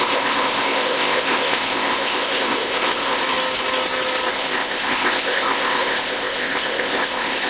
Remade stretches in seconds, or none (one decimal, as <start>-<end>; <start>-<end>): 0.0-3.2; 4.3-7.5